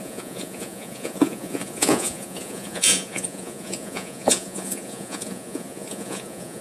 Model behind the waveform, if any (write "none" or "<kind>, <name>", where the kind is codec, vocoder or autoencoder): vocoder, Vocos